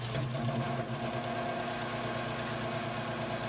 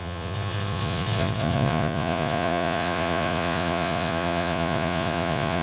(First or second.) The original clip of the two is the first